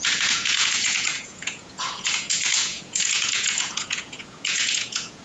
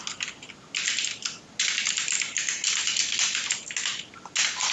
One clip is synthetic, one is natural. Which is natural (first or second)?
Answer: second